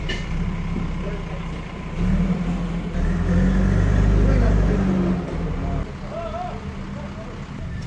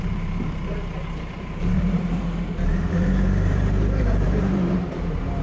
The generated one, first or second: second